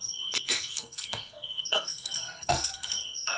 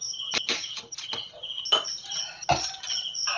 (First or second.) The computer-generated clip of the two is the first